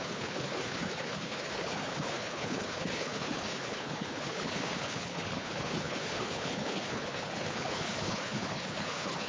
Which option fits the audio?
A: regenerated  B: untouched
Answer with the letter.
A